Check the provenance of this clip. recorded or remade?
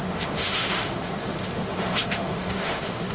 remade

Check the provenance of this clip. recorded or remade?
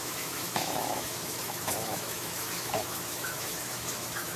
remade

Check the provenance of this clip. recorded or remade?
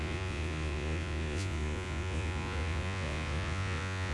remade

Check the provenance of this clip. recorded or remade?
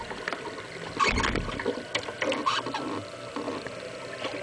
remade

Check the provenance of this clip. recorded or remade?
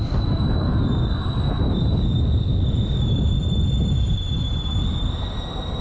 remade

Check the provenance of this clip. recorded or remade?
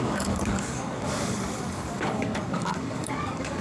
remade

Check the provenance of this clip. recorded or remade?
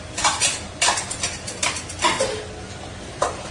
recorded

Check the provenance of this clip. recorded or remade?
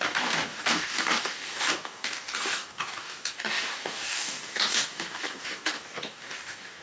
remade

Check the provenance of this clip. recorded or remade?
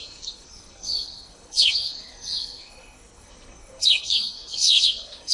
remade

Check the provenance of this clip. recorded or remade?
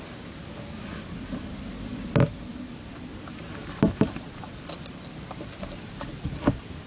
recorded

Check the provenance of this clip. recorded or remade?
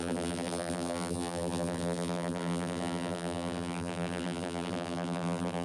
remade